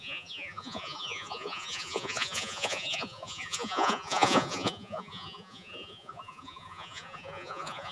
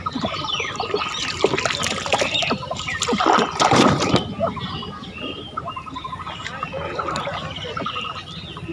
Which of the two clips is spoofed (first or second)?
first